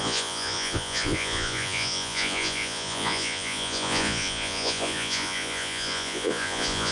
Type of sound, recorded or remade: remade